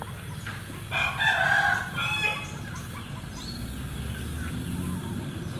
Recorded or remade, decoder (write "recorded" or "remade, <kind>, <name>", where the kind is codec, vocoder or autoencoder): recorded